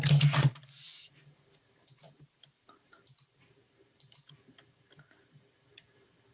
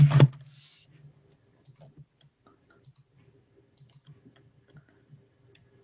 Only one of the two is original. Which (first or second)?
second